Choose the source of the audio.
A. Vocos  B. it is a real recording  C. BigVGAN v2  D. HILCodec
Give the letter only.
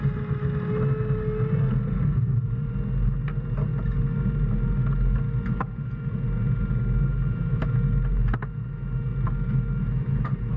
B